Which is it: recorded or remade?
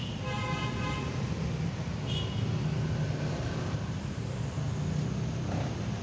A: recorded